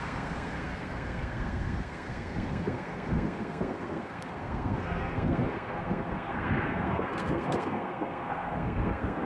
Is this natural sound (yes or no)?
no